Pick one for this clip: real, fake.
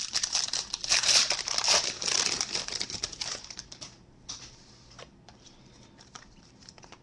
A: fake